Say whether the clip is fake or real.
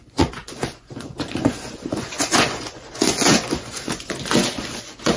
fake